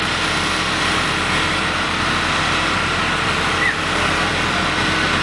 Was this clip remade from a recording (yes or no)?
no